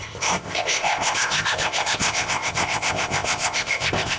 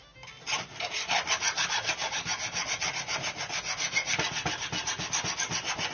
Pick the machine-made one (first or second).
first